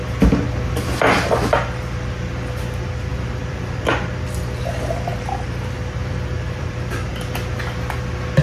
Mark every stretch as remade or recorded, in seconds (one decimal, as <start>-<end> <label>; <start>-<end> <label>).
0.0-3.1 recorded; 3.1-4.6 remade; 4.6-5.1 recorded; 5.1-7.1 remade; 7.1-8.4 recorded